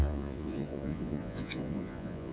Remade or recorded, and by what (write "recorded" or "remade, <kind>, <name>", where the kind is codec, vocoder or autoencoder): remade, vocoder, Vocos